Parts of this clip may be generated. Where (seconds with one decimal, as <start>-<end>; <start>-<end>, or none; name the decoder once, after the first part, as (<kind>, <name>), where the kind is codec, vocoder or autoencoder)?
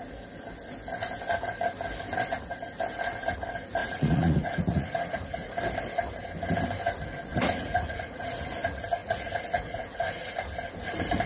3.8-5.5 (vocoder, Vocos); 7.3-8.2; 9.0-10.3